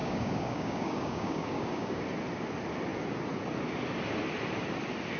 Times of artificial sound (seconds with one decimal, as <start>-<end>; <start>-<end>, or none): 0.0-2.0